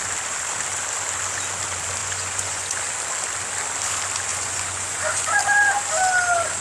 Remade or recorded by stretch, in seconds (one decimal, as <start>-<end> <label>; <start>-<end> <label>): 0.0-2.0 recorded; 2.0-2.8 remade; 2.8-4.3 recorded; 4.3-5.4 remade; 5.4-6.6 recorded